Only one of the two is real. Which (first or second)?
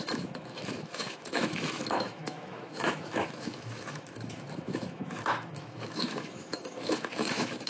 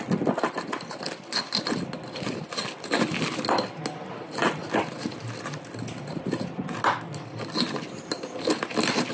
second